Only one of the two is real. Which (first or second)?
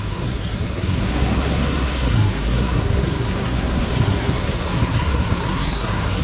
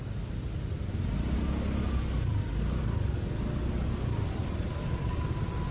second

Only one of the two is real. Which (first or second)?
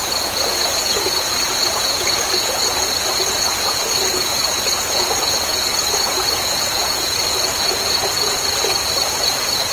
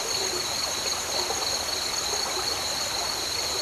second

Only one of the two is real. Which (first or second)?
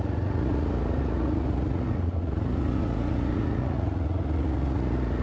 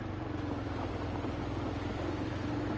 second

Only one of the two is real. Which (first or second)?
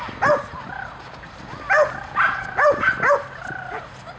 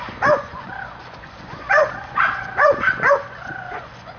first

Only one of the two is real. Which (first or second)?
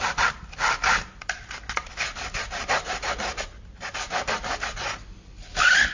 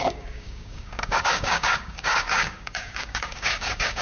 first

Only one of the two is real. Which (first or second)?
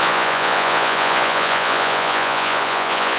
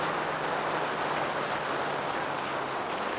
second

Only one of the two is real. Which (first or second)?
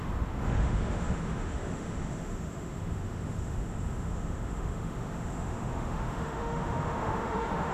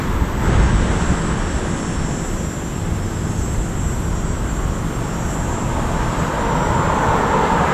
second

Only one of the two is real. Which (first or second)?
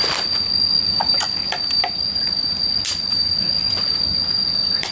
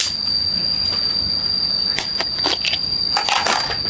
second